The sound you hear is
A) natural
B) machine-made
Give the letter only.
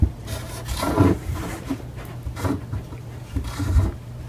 B